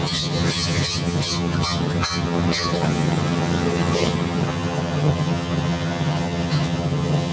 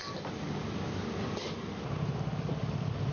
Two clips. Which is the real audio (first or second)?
second